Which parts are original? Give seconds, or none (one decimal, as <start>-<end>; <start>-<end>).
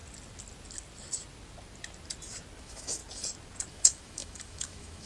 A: 0.0-2.6; 3.0-3.7